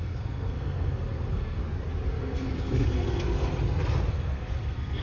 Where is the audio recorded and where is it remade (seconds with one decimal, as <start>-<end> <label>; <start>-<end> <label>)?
0.0-1.6 remade; 1.6-2.2 recorded; 2.2-3.5 remade; 3.5-4.1 recorded; 4.1-5.0 remade